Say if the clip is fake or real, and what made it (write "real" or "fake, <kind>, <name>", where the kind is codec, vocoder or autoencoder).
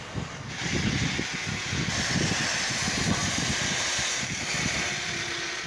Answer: real